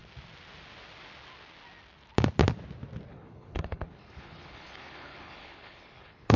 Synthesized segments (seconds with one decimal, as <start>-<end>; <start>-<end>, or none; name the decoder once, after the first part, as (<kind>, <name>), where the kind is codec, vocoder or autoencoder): 3.1-6.4 (codec, HILCodec)